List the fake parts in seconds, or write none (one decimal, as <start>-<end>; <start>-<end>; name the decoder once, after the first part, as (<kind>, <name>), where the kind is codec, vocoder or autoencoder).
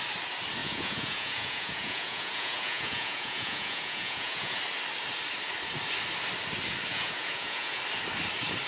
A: 0.6-4.6 (vocoder, Vocos); 6.9-7.8